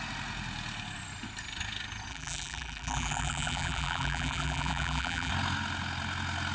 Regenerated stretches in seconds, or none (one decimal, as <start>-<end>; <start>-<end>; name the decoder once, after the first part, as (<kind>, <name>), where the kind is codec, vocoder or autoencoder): 2.1-5.3 (vocoder, BigVGAN v2)